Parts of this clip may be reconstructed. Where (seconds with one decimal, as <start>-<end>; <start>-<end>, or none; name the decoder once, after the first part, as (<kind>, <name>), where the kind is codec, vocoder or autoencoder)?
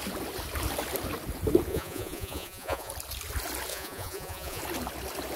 1.7-2.9 (vocoder, Vocos); 3.7-4.6